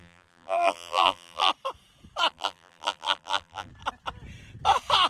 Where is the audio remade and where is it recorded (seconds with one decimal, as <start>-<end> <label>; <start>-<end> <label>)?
0.0-1.5 remade; 1.5-2.3 recorded; 2.3-3.7 remade; 3.7-5.1 recorded